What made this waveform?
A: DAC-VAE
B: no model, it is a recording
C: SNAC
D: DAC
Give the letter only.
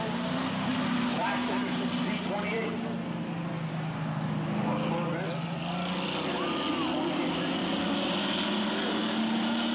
B